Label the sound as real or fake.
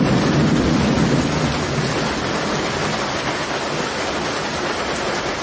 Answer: real